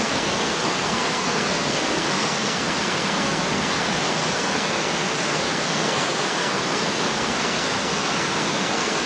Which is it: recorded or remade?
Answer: remade